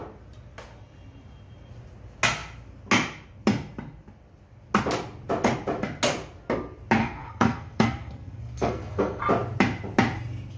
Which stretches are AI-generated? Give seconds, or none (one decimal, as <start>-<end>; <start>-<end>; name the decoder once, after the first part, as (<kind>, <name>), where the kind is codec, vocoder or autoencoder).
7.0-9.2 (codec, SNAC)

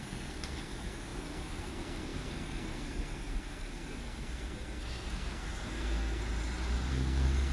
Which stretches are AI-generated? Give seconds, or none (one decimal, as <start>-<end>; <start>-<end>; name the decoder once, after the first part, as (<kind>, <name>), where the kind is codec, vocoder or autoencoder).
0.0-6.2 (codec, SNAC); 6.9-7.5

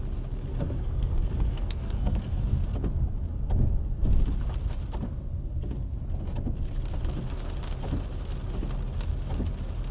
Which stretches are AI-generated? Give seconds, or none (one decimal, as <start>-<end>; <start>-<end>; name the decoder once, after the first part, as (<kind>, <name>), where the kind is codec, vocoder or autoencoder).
0.5-2.4 (codec, SNAC)

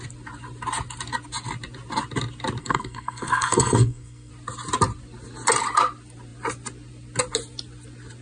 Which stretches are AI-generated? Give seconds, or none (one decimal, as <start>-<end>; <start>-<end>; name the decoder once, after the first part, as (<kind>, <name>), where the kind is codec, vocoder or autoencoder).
2.6-4.3 (codec, SNAC)

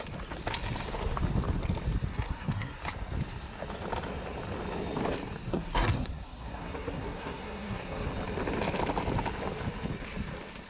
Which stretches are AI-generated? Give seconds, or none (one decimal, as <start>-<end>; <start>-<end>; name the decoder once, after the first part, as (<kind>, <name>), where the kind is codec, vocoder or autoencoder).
2.1-2.8 (codec, SNAC); 5.5-8.1

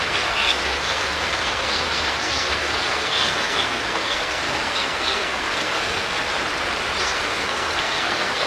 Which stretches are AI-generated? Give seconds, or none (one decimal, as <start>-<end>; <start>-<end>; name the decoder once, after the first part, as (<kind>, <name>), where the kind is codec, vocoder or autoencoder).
0.0-6.3 (codec, SNAC); 7.0-8.5

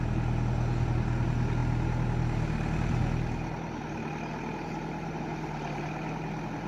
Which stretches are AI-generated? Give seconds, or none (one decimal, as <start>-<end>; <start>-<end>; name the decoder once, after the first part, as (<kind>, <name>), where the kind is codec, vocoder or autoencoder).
none

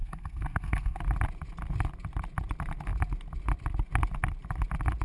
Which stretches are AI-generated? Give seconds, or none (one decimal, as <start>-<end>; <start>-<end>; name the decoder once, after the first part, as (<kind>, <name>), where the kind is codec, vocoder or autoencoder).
0.0-1.0 (codec, SNAC)